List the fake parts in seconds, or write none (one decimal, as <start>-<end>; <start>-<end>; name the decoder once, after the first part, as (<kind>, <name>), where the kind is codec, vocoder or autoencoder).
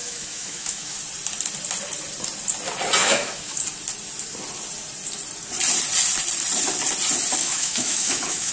0.0-1.0 (autoencoder, DAC-VAE); 3.0-3.6; 7.4-8.5